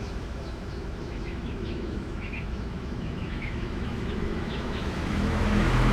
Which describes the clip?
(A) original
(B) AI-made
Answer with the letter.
B